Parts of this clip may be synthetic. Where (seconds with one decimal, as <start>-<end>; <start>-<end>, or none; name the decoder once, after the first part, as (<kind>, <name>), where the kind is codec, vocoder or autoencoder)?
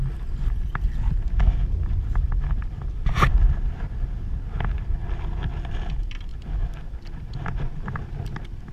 none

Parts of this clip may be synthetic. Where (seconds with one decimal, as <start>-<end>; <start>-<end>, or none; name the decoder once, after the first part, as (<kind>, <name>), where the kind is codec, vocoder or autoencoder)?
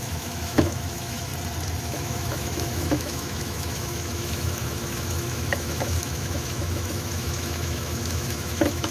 0.0-1.3 (autoencoder, DAC-VAE); 1.8-8.9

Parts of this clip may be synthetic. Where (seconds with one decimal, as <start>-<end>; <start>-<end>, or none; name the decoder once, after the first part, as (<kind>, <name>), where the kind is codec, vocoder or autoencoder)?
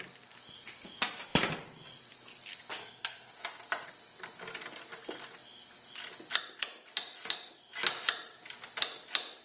2.8-3.3 (codec, SNAC)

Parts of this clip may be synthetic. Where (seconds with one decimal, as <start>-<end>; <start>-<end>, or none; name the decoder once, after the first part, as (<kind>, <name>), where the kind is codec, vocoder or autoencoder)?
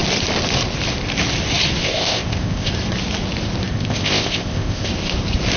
1.8-2.7 (codec, ZipCodec); 3.7-4.9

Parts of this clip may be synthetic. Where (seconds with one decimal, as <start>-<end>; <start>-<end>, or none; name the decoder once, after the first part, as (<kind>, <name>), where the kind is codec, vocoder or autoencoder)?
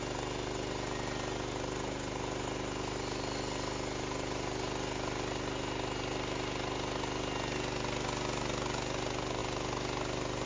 none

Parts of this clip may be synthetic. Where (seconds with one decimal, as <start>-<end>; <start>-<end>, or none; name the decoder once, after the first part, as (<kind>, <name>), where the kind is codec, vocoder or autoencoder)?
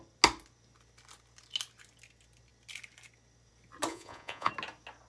3.9-4.5 (vocoder, Vocos)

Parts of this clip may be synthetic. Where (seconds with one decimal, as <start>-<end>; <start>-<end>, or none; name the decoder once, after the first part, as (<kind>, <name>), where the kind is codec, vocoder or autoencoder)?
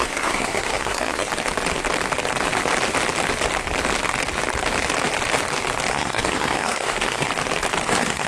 0.0-1.3 (codec, SNAC); 5.9-7.3; 7.8-8.3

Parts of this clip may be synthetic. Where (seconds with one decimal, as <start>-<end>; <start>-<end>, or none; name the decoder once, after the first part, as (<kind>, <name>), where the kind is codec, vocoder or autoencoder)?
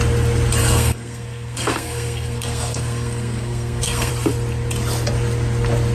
0.6-4.1 (codec, SNAC)